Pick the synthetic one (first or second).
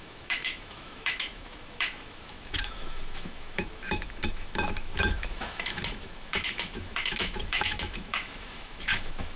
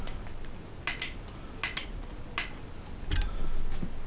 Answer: first